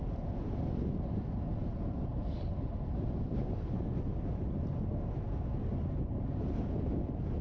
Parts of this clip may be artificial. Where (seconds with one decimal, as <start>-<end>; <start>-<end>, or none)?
none